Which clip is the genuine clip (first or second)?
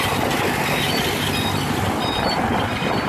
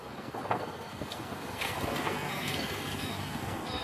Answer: first